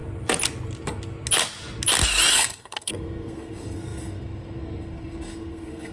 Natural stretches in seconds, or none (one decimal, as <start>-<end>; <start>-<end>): 0.0-2.3